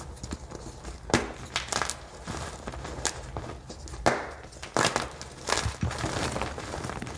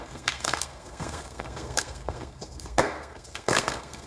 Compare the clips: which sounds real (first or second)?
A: first